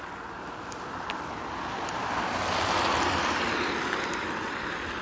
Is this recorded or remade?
remade